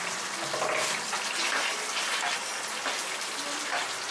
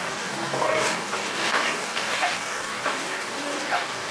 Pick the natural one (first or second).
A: first